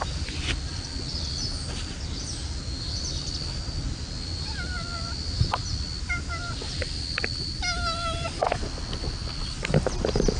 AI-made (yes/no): no